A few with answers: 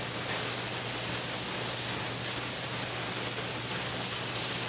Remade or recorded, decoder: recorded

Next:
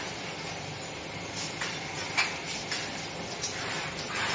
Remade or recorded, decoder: recorded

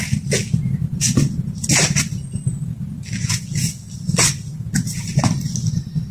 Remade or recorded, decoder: recorded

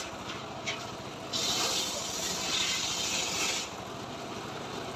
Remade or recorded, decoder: recorded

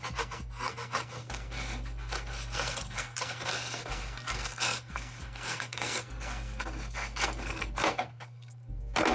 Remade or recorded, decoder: remade, codec, SNAC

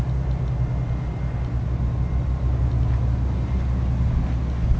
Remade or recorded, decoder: recorded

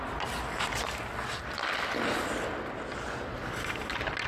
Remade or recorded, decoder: recorded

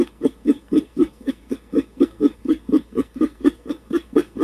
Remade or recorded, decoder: remade, codec, SNAC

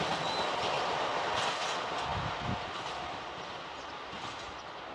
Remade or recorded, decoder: recorded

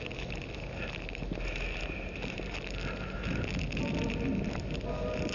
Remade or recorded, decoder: recorded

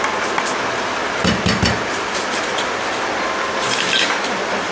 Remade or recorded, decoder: recorded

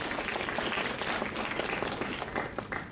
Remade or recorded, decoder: recorded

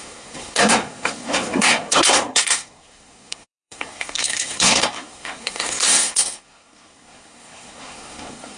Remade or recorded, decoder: remade, codec, SNAC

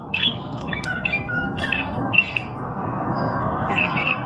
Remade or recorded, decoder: remade, codec, SNAC